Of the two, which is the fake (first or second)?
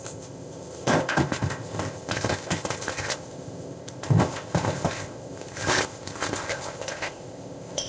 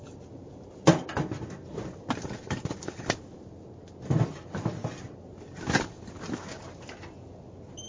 first